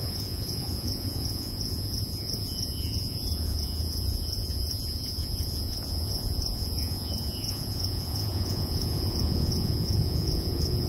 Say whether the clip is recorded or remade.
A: remade